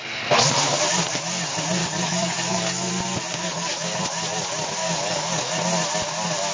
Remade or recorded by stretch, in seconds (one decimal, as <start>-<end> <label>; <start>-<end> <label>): 0.0-1.8 recorded; 1.8-2.9 remade; 2.9-3.3 recorded; 3.3-4.0 remade; 4.0-4.8 recorded; 4.8-5.5 remade; 5.5-6.5 recorded

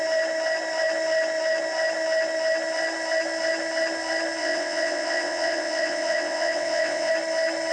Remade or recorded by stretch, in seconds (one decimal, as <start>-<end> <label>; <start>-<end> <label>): 0.0-4.4 recorded; 4.4-7.1 remade; 7.1-7.7 recorded

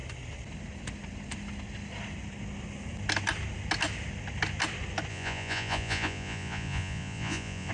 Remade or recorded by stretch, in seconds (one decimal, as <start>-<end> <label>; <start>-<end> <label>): 0.0-5.1 recorded; 5.1-7.7 remade

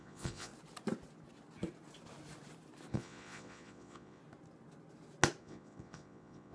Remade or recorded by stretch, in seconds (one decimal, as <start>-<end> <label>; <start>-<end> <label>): 0.0-0.5 remade; 0.5-2.9 recorded; 2.9-4.2 remade; 4.2-5.4 recorded; 5.4-6.5 remade

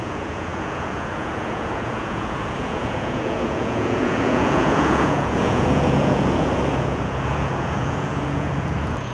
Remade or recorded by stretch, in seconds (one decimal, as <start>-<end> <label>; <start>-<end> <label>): 0.0-9.1 remade

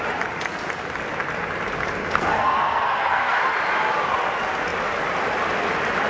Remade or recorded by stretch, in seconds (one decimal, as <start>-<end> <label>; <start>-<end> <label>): 0.0-2.0 recorded; 2.0-3.4 remade; 3.4-6.1 recorded